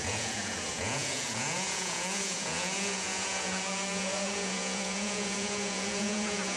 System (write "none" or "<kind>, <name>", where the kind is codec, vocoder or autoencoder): vocoder, Vocos